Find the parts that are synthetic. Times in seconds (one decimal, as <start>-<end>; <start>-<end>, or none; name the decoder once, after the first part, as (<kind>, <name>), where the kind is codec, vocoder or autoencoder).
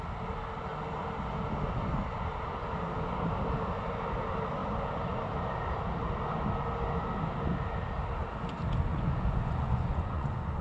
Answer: 8.9-10.6 (vocoder, Vocos)